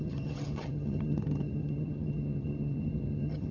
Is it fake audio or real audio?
fake